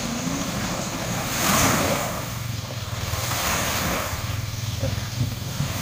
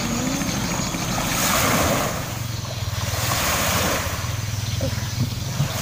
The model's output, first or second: first